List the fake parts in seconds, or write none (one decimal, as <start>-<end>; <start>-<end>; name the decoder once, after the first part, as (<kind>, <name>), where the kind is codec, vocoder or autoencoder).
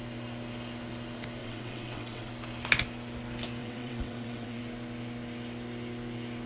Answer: 1.4-2.3 (vocoder, WaveNeXt); 3.6-4.6